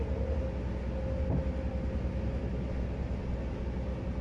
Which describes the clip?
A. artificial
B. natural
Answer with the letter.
B